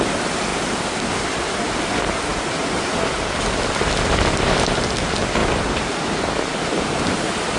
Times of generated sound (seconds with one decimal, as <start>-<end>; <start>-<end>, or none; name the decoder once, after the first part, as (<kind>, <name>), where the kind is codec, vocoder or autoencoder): none